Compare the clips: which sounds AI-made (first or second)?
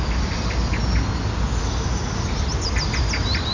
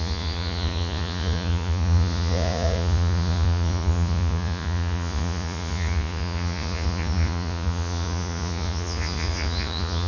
second